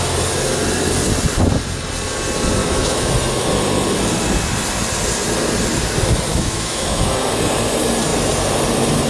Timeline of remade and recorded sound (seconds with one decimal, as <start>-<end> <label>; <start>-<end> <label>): 0.0-2.6 recorded; 2.6-3.1 remade; 3.1-6.3 recorded; 6.3-7.1 remade; 7.1-9.1 recorded